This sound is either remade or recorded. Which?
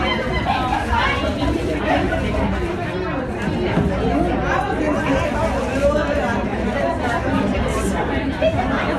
recorded